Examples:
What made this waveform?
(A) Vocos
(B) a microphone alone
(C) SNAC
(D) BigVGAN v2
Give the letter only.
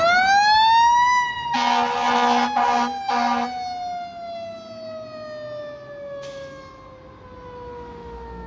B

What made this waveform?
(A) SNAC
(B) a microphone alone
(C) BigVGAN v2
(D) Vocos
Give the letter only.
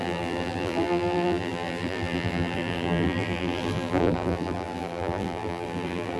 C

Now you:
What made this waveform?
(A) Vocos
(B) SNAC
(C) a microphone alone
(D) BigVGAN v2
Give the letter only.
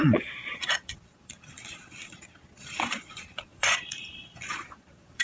A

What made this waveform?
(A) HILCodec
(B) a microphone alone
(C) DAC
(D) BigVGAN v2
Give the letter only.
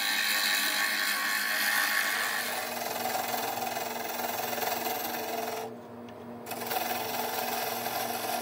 B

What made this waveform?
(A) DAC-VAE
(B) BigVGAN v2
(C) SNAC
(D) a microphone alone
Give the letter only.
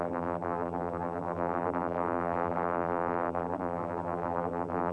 B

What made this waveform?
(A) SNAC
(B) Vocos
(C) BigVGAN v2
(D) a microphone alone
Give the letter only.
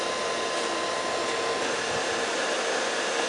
D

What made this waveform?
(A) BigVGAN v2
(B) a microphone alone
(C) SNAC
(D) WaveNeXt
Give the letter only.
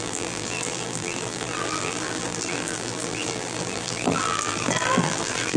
A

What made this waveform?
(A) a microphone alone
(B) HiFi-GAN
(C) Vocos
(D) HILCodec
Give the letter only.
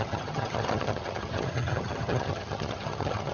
B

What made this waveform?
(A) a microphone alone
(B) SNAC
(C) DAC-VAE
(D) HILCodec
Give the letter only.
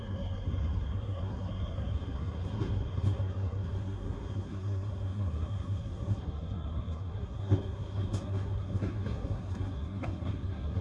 B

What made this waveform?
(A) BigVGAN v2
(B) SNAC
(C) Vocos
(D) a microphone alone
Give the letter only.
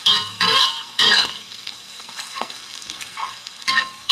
B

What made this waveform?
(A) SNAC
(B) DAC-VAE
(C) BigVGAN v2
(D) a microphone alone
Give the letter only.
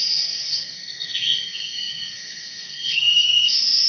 A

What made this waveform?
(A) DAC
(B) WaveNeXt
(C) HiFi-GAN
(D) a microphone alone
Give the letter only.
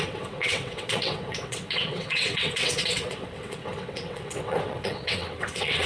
B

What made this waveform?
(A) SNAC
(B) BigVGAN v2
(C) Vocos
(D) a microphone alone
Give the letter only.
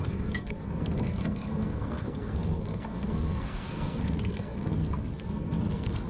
A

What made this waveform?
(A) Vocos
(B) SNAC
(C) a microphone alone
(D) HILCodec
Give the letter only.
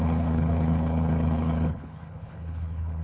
D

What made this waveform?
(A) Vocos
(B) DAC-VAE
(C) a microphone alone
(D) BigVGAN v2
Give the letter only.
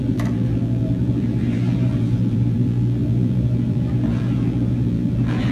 D